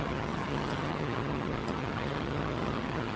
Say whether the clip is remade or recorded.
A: remade